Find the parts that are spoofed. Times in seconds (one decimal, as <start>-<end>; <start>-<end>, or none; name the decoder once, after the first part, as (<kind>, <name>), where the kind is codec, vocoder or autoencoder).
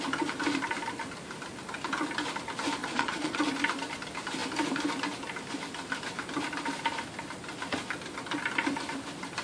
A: 2.8-3.4 (vocoder, Vocos)